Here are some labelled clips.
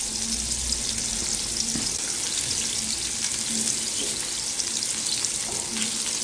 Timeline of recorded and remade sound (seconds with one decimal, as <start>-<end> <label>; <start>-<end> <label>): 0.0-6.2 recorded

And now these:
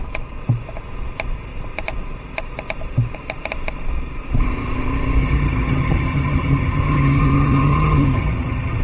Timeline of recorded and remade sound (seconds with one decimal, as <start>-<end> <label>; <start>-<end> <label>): 0.0-5.2 recorded; 5.2-8.8 remade

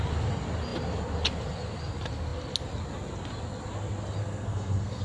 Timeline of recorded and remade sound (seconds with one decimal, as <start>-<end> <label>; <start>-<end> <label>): 0.0-4.2 recorded; 4.2-5.0 remade